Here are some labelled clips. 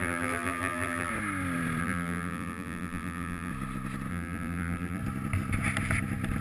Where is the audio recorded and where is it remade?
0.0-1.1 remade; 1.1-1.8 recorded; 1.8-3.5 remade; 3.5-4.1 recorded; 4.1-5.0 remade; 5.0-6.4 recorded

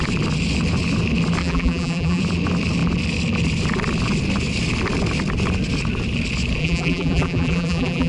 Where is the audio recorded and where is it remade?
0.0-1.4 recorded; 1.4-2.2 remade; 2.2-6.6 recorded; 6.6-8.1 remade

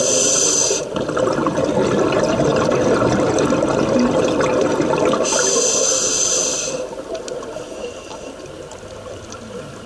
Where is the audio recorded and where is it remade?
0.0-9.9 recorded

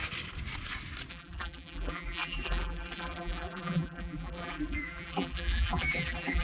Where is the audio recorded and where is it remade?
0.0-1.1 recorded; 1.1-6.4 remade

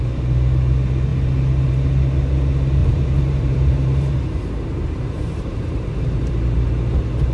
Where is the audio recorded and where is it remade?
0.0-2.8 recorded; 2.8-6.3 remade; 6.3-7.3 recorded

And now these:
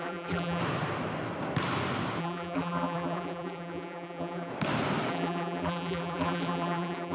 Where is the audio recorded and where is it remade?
0.0-0.6 remade; 0.6-2.2 recorded; 2.2-4.5 remade; 4.5-5.1 recorded; 5.1-7.1 remade

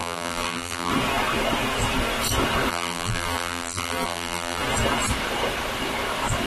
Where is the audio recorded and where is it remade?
0.0-0.9 remade; 0.9-2.7 recorded; 2.7-4.6 remade; 4.6-6.5 recorded